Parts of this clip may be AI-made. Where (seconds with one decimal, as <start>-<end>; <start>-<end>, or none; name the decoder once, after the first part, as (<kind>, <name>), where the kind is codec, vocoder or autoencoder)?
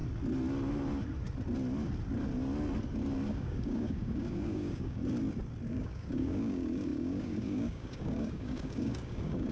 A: 3.3-5.0 (codec, DAC); 5.7-9.5